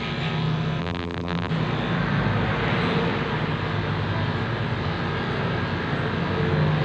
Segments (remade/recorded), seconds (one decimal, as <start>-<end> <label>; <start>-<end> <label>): 0.0-0.8 recorded; 0.8-1.5 remade; 1.5-6.8 recorded